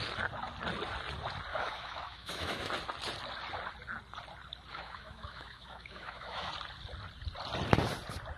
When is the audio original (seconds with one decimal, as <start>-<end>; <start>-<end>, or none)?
0.0-1.5; 2.7-4.7; 6.5-8.4